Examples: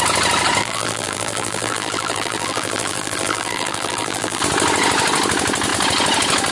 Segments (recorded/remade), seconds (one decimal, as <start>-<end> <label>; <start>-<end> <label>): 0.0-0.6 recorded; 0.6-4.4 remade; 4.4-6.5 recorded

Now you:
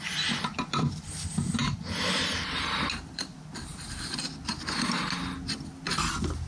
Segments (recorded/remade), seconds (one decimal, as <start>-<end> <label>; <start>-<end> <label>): 0.0-1.6 recorded; 1.6-4.2 remade; 4.2-6.5 recorded

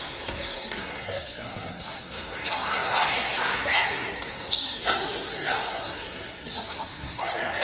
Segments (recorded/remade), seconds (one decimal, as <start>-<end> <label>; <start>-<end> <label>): 0.0-7.6 remade